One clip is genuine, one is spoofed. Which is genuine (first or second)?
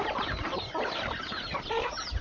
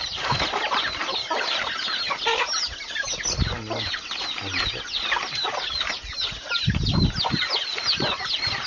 second